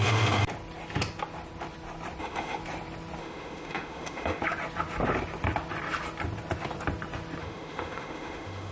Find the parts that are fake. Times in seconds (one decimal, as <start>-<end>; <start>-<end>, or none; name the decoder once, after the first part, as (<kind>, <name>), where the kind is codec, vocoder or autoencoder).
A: 0.0-0.4 (autoencoder, DAC-VAE); 2.2-2.6; 3.2-4.4; 7.4-8.7